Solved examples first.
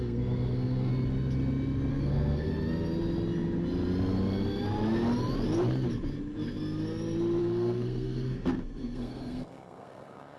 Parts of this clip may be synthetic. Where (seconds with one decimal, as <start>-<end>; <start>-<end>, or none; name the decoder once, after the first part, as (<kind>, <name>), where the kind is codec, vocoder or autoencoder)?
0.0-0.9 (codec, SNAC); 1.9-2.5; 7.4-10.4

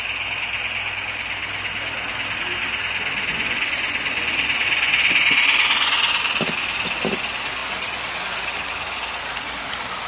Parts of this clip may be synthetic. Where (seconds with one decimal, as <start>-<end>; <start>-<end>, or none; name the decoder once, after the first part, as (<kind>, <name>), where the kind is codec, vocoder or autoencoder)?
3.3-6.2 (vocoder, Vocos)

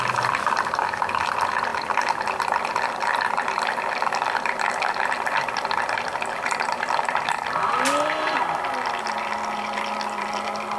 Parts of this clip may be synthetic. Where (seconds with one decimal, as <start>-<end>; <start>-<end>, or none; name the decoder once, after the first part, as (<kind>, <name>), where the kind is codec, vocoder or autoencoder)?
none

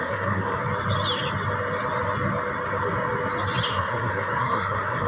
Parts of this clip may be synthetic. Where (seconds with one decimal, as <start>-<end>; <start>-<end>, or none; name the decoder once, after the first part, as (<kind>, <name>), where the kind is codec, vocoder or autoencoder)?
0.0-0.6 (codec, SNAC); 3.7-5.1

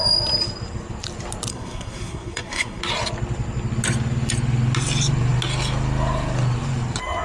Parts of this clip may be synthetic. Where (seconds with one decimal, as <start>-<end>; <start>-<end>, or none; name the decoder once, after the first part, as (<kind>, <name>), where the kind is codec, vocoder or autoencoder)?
1.5-2.8 (codec, SNAC)